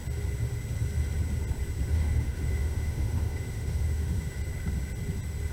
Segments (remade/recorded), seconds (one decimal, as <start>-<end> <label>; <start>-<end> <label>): 0.0-1.9 recorded; 1.9-4.4 remade; 4.4-5.5 recorded